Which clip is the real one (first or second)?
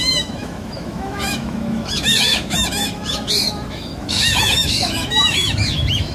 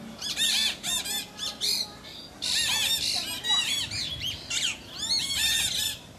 second